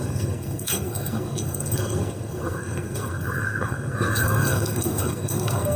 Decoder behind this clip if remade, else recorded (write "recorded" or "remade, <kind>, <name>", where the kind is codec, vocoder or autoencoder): remade, codec, SNAC